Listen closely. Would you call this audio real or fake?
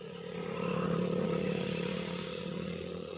fake